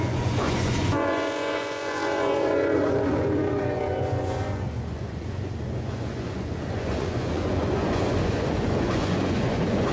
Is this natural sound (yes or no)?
no